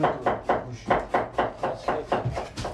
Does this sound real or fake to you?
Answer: real